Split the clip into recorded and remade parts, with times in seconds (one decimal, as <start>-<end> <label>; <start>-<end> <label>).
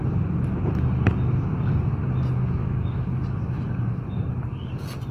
0.0-2.6 recorded; 2.6-3.1 remade; 3.1-5.1 recorded